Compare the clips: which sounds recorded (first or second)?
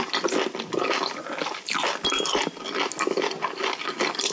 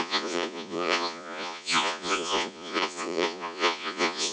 first